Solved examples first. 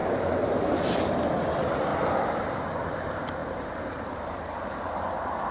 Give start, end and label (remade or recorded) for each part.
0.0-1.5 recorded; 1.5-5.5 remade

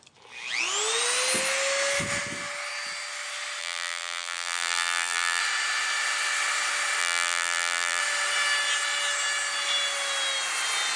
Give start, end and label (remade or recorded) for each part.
0.0-3.6 recorded; 3.6-5.4 remade; 5.4-7.0 recorded; 7.0-8.0 remade; 8.0-11.0 recorded

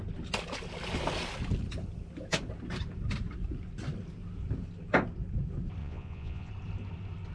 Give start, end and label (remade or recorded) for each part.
0.0-5.8 recorded; 5.8-6.5 remade; 6.5-7.3 recorded

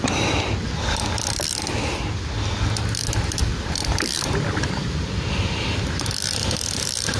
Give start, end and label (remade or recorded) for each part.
0.0-7.2 recorded

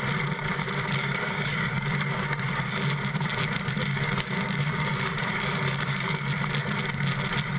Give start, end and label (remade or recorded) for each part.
0.0-1.0 recorded; 1.0-2.8 remade; 2.8-3.8 recorded; 3.8-6.3 remade; 6.3-7.6 recorded

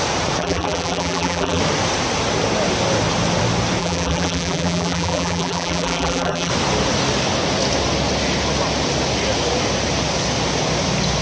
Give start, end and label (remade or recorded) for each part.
0.0-0.4 recorded; 0.4-1.6 remade; 1.6-3.8 recorded; 3.8-6.5 remade; 6.5-11.2 recorded

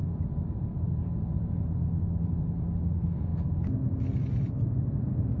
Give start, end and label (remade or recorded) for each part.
0.0-1.1 remade; 1.1-5.4 recorded